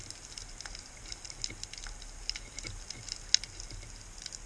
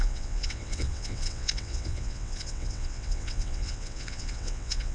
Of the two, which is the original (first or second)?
first